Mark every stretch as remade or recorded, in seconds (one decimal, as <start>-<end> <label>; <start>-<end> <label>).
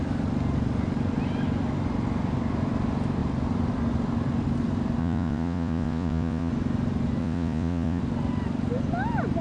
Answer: 0.0-5.0 recorded; 5.0-6.5 remade; 6.5-7.2 recorded; 7.2-8.0 remade; 8.0-9.4 recorded